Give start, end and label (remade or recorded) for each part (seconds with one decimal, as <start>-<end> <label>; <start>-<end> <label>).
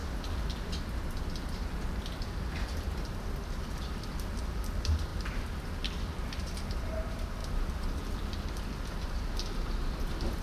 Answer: 0.0-7.4 remade; 7.4-8.3 recorded; 8.3-10.4 remade